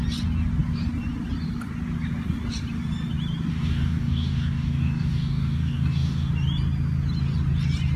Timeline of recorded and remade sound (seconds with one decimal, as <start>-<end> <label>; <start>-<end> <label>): 0.0-3.5 recorded; 3.5-6.3 remade; 6.3-8.0 recorded